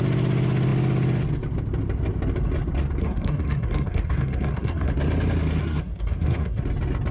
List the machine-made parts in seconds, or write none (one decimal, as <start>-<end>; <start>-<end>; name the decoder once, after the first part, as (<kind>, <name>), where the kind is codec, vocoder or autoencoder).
3.0-4.9 (codec, SNAC); 5.6-6.6